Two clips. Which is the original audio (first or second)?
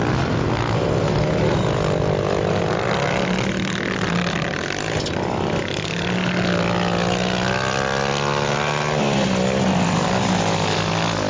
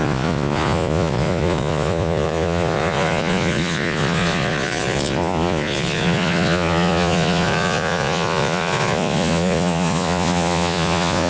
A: first